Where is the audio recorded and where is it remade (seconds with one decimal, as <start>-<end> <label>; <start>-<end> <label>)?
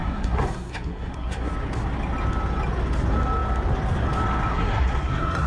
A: 0.0-1.5 remade; 1.5-4.5 recorded; 4.5-5.5 remade